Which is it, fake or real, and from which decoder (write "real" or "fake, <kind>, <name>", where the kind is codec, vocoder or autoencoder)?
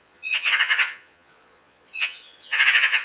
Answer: fake, vocoder, Vocos